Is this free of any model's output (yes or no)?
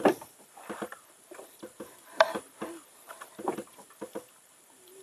no